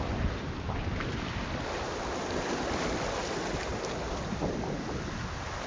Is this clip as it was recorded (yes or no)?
yes